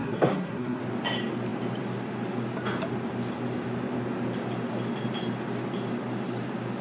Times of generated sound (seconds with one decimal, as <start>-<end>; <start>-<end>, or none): 0.0-0.8

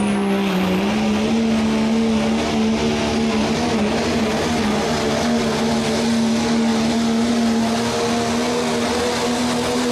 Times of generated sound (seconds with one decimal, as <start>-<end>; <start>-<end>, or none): none

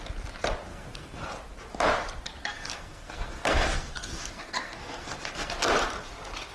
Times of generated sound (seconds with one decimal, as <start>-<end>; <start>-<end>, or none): 0.7-1.3; 2.4-5.5